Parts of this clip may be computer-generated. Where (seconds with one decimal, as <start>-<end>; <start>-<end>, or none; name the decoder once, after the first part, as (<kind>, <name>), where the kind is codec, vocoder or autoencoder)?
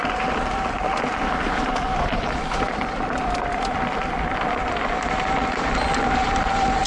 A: none